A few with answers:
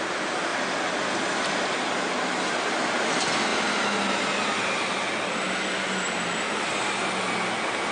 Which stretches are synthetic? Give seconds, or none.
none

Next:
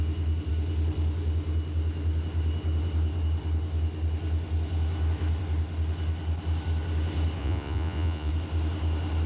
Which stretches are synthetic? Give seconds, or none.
7.4-8.3 (vocoder, Vocos)

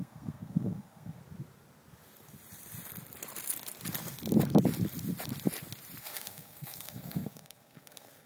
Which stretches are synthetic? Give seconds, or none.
0.0-1.2 (codec, SNAC); 6.0-8.3

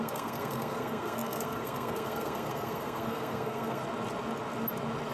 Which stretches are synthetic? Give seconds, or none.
0.0-3.8 (codec, SNAC)

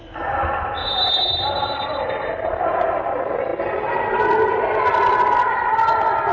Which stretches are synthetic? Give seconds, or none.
0.8-1.3 (vocoder, Vocos)

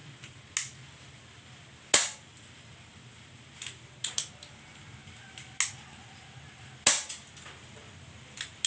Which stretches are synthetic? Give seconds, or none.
none

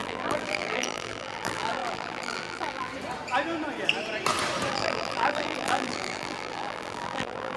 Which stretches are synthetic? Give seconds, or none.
0.0-2.9 (vocoder, BigVGAN v2); 4.7-7.6